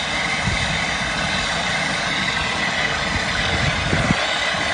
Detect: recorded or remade recorded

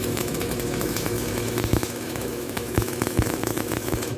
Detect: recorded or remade remade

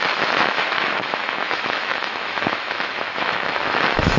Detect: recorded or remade remade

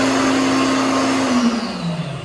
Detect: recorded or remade recorded